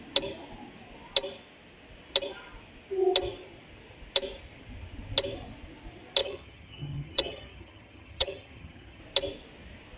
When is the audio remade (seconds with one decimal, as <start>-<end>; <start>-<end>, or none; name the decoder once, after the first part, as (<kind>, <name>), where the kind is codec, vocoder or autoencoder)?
6.2-9.0 (vocoder, HiFi-GAN)